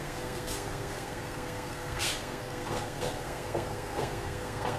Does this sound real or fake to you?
fake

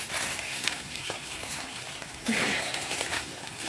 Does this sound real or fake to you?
fake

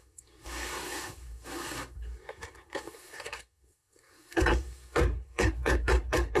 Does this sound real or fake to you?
fake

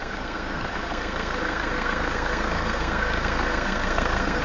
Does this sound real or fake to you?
fake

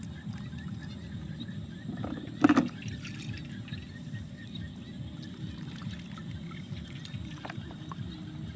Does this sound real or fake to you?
real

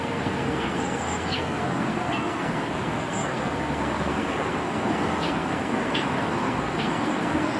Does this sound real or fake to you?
fake